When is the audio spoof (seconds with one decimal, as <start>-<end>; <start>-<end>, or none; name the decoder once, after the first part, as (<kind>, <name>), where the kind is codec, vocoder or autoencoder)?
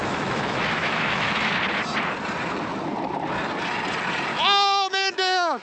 0.0-1.5 (autoencoder, DAC-VAE); 4.3-5.6